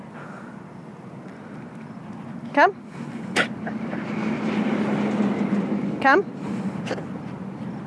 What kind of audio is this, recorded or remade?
recorded